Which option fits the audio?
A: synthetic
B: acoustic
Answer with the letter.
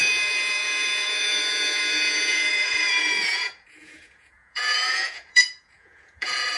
A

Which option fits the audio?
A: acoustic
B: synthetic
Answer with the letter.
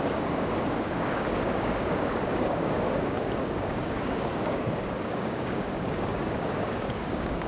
B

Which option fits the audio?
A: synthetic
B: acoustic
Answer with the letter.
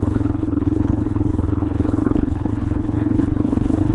A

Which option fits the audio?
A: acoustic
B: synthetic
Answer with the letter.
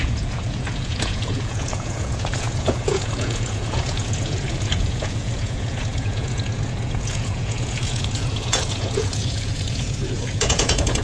B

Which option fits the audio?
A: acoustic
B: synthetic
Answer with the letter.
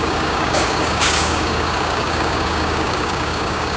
B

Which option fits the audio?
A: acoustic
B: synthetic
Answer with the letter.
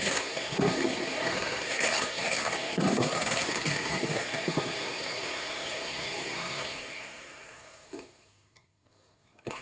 B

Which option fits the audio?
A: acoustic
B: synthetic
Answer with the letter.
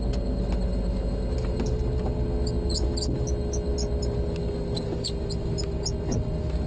A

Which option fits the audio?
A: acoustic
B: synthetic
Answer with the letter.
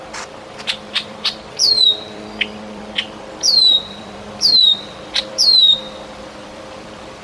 B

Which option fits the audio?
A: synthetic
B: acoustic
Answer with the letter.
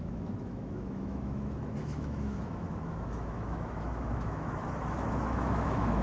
A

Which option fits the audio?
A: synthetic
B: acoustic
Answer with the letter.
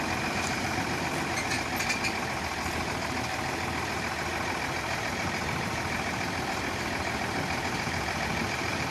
B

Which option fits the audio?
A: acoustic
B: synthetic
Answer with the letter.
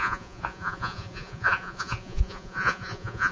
B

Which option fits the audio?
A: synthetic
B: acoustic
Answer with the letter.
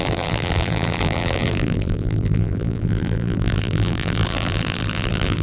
A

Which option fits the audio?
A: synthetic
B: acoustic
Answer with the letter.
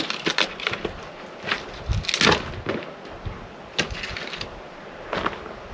B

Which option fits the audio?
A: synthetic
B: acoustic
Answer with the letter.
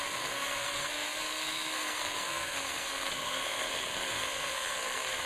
A